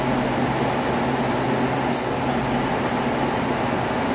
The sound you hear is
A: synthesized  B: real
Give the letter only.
B